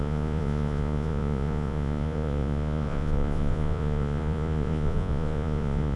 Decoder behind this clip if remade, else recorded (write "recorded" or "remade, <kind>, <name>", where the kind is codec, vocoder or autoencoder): remade, vocoder, Vocos